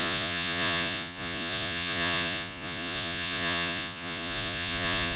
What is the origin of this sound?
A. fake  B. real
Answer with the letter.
A